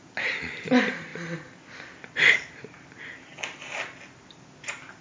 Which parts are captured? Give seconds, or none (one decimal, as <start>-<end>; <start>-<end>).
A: 0.0-5.0